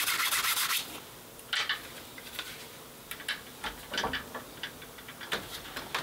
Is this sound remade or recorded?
recorded